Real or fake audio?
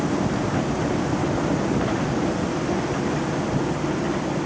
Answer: real